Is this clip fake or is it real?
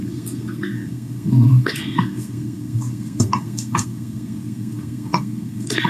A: fake